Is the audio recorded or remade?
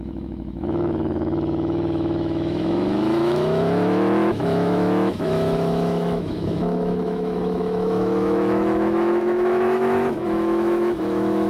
remade